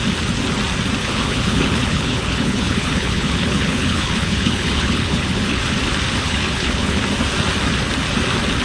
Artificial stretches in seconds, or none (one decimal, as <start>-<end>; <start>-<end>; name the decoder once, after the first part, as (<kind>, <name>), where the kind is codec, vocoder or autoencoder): 1.0-5.6 (codec, HILCodec); 6.2-7.0